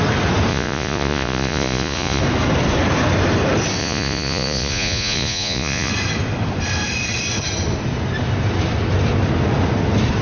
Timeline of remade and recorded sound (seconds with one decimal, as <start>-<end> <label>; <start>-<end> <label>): 0.0-0.5 recorded; 0.5-2.2 remade; 2.2-3.8 recorded; 3.8-5.9 remade; 5.9-10.2 recorded